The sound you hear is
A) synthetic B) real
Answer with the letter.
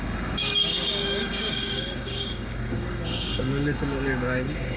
A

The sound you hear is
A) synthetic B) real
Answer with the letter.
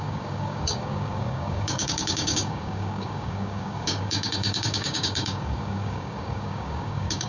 A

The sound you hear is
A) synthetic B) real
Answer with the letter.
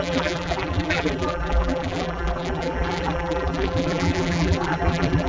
A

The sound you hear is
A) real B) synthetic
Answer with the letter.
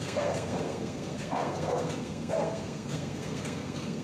B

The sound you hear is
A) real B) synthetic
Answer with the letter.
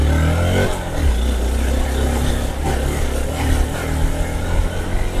A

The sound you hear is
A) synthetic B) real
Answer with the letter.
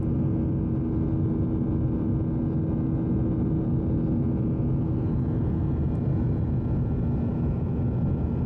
B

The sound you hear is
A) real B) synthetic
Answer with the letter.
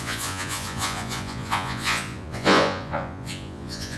B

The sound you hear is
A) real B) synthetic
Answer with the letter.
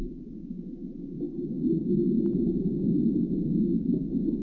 A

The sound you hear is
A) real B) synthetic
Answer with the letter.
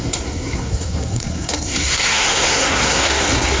B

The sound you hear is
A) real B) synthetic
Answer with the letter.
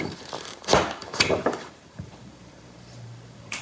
B